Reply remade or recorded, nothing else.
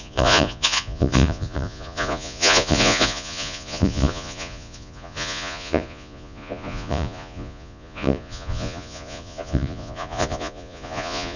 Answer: remade